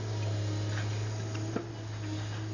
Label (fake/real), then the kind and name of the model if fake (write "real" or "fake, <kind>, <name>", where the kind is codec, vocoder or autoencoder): real